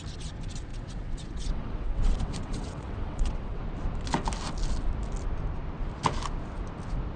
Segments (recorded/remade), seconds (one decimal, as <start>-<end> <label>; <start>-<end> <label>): 0.0-0.7 recorded; 0.7-3.6 remade; 3.6-7.2 recorded